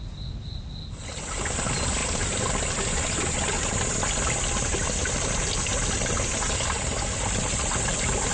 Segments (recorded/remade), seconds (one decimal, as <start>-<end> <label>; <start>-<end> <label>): 0.0-8.3 recorded